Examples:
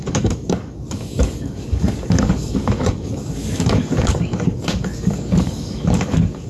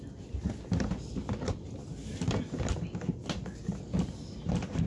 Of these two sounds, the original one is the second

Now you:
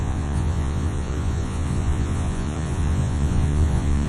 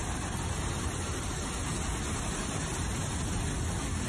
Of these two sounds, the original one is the second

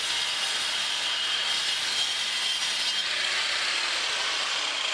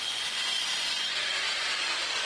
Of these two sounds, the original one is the first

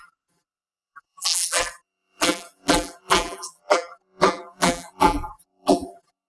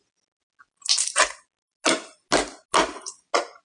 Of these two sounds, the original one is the second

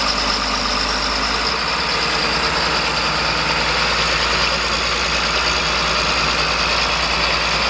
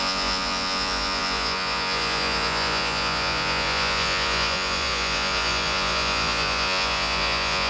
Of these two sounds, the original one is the first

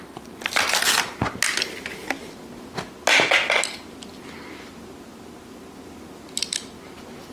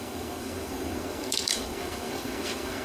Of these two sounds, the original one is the first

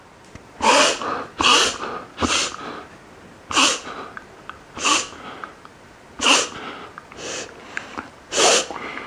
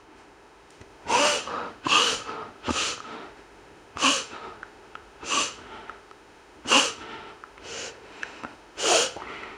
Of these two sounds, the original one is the first